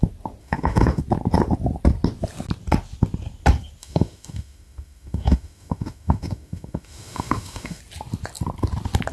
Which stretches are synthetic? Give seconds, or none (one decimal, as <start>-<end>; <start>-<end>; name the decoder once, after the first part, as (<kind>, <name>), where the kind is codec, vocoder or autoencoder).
0.4-1.0 (autoencoder, DAC-VAE); 3.8-7.8